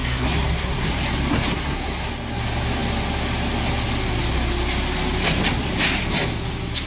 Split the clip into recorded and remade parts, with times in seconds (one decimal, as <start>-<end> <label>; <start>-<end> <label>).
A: 0.0-0.9 remade; 0.9-1.5 recorded; 1.5-2.1 remade; 2.1-6.9 recorded